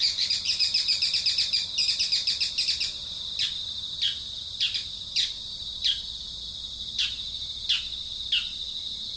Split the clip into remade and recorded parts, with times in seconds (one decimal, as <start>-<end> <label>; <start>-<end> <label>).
0.0-9.2 recorded